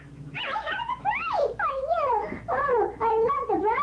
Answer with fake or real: fake